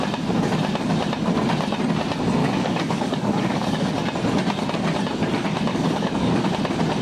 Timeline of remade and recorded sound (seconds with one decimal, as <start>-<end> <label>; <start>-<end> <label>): 0.0-2.4 recorded; 2.4-3.9 remade; 3.9-5.7 recorded; 5.7-6.5 remade; 6.5-7.0 recorded